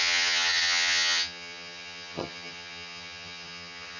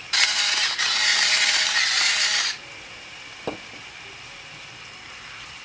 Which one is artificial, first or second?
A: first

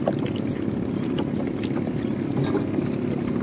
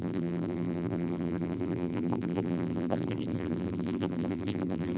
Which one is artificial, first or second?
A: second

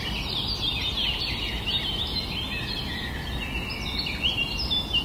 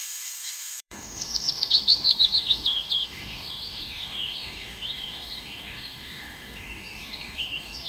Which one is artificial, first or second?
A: second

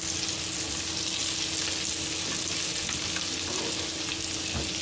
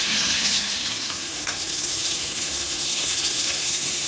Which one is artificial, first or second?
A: second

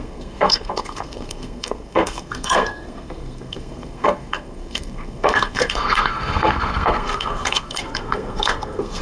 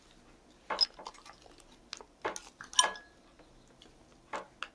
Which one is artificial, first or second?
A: first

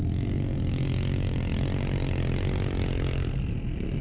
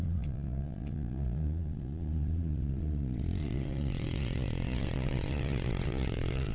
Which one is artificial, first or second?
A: second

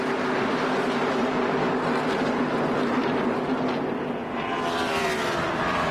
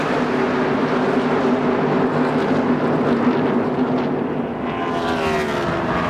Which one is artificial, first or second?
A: first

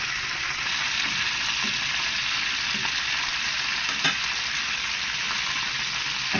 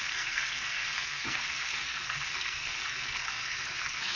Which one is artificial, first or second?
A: second